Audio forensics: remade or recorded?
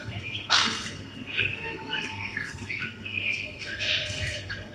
remade